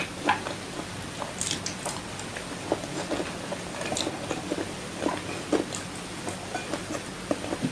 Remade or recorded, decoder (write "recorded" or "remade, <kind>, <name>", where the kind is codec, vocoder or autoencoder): recorded